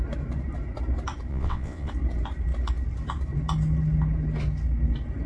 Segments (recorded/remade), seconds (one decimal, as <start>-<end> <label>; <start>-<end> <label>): 0.0-1.3 recorded; 1.3-1.9 remade; 1.9-5.3 recorded